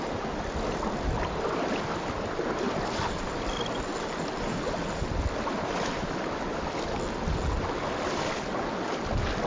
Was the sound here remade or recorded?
recorded